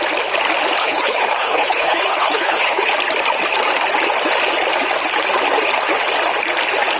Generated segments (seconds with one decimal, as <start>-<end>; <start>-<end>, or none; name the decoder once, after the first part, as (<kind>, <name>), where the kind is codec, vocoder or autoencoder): 0.8-2.9 (codec, HILCodec)

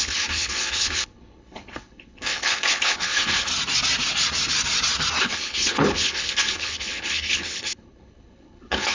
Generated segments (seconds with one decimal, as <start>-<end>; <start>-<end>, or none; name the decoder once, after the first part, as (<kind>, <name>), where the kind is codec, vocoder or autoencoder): 0.0-3.5 (codec, HILCodec); 5.2-8.9

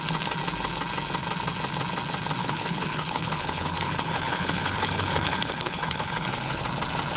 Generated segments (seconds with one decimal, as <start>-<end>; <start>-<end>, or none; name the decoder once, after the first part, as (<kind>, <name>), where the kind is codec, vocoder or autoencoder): 2.4-6.6 (codec, HILCodec)

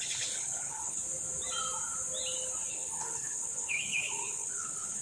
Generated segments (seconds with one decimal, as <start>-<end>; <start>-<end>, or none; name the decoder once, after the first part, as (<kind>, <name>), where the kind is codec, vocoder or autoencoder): 0.0-1.0 (codec, HILCodec); 2.7-5.0

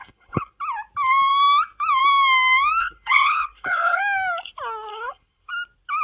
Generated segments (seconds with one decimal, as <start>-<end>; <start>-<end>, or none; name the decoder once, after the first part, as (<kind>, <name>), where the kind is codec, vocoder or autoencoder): 0.0-0.6 (codec, HILCodec); 2.8-4.0; 4.9-5.5

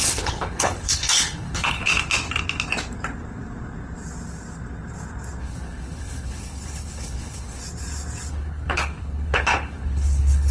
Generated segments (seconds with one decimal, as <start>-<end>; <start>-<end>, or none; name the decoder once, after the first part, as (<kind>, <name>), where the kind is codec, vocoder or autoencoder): 0.0-1.9 (codec, HILCodec); 5.4-7.6; 8.3-10.5